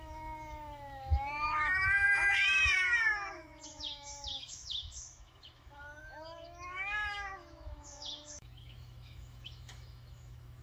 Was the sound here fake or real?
fake